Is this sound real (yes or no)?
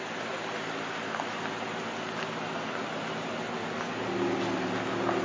yes